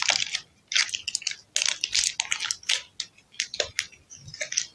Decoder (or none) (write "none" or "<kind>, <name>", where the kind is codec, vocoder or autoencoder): none